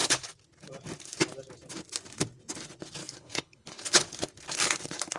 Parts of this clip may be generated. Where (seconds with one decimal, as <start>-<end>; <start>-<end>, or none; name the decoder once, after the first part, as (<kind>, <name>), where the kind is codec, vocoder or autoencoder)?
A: 3.0-4.1 (codec, HILCodec)